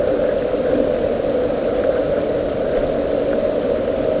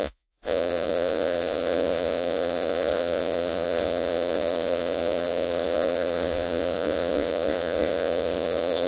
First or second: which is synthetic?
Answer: second